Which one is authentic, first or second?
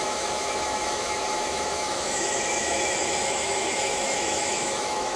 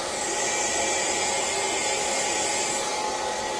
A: second